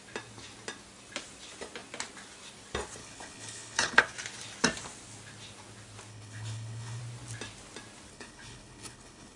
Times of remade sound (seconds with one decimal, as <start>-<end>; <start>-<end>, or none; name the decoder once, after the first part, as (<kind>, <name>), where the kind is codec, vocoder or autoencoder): 3.0-4.0 (codec, HILCodec); 6.1-7.0; 8.1-9.4